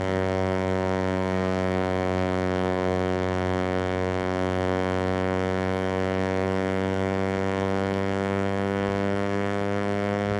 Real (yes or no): no